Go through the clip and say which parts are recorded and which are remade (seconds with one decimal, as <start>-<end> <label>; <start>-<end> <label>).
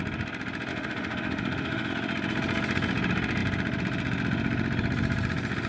0.0-0.7 recorded; 0.7-1.9 remade; 1.9-5.7 recorded